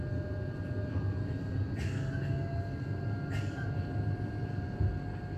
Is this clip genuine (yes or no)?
yes